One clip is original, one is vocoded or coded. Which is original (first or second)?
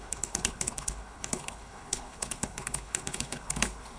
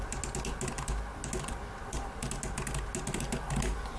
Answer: second